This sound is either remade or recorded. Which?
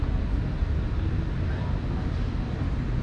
recorded